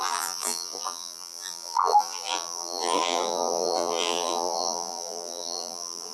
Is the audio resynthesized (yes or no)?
yes